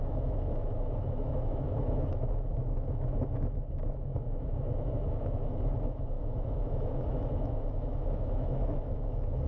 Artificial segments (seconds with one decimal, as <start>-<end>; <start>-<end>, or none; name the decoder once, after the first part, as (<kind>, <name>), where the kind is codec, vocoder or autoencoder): 0.0-9.5 (autoencoder, DAC-VAE)

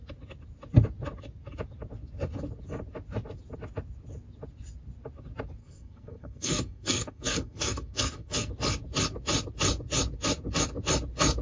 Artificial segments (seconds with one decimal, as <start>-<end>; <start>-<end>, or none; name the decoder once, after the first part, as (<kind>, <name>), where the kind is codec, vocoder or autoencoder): 5.6-8.5 (codec, SNAC)